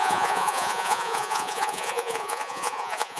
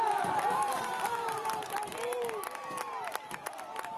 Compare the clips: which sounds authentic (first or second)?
second